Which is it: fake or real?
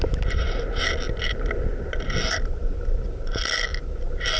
real